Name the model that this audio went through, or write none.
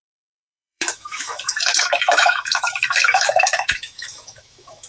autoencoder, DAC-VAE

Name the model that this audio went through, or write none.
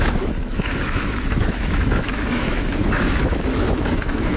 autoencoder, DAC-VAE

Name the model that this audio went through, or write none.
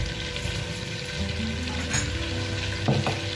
none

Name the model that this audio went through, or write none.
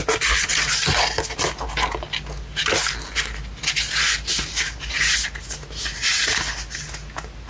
none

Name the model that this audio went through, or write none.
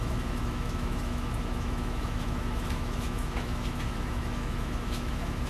autoencoder, DAC-VAE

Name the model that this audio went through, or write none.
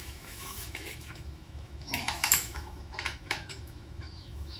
autoencoder, DAC-VAE